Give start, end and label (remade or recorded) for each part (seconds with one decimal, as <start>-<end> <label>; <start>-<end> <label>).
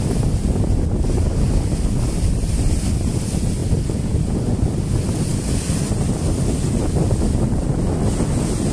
0.0-8.7 recorded